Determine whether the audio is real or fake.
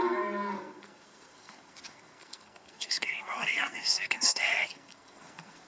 fake